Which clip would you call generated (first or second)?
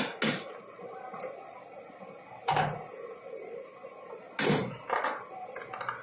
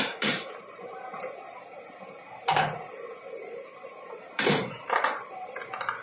second